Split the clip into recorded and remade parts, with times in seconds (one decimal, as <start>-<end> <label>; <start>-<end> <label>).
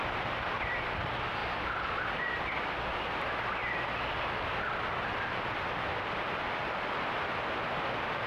0.0-8.3 recorded